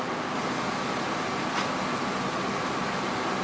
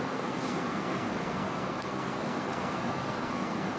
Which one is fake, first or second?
second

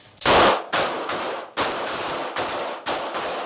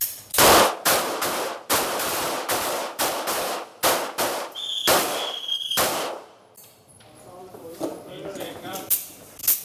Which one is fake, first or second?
second